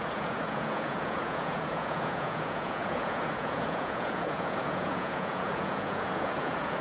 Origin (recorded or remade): remade